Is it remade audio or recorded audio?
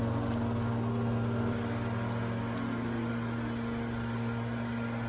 recorded